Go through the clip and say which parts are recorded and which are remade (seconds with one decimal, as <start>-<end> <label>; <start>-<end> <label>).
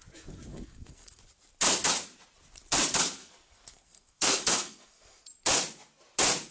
0.0-0.5 recorded; 0.5-1.2 remade; 1.2-3.2 recorded; 3.2-5.2 remade; 5.2-6.5 recorded